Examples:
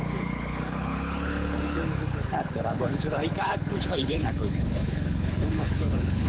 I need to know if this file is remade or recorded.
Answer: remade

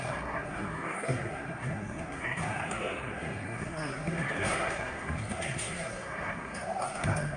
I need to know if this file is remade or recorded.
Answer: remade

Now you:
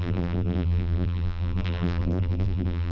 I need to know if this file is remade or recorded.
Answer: remade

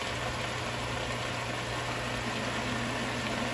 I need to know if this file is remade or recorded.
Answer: recorded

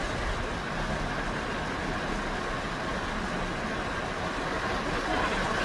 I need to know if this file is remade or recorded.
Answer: recorded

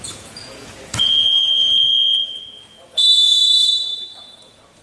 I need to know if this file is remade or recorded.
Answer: remade